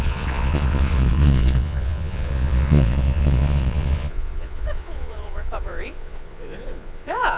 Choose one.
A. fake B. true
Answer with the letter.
A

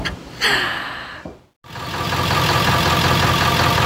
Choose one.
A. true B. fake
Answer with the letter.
A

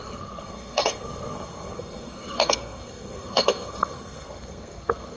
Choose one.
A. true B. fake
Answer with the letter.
B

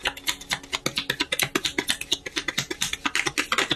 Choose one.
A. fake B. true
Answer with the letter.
B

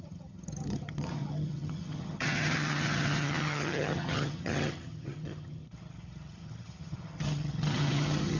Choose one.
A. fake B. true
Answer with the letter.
A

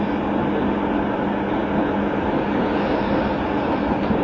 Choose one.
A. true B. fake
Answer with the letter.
A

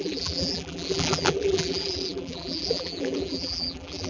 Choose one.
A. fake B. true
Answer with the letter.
A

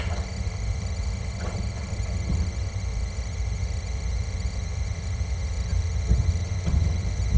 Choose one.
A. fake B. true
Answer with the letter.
A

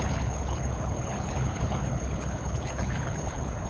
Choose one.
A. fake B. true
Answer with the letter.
A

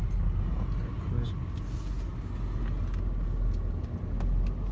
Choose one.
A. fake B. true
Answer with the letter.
B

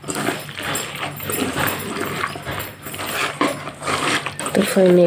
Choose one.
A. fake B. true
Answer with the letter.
B